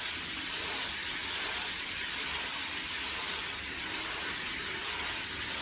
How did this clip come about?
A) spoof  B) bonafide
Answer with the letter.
B